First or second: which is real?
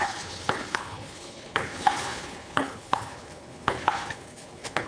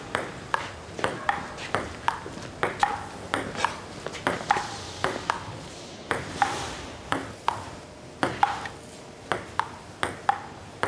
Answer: second